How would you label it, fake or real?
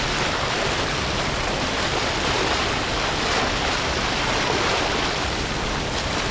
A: real